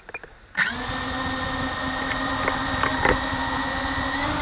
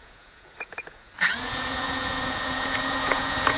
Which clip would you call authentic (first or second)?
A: first